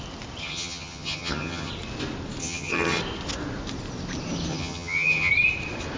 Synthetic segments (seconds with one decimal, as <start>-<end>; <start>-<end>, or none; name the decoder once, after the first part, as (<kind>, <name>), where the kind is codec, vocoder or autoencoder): 0.4-1.7 (vocoder, HiFi-GAN); 2.4-3.0; 4.5-5.3